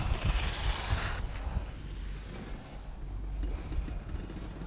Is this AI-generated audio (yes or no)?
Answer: no